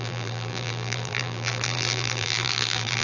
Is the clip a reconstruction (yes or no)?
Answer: yes